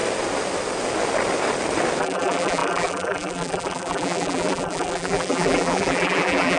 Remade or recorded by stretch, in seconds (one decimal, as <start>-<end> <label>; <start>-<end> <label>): 0.0-2.0 recorded; 2.0-6.6 remade